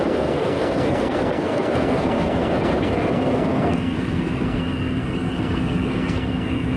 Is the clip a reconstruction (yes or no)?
yes